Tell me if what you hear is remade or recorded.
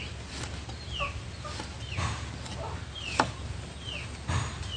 recorded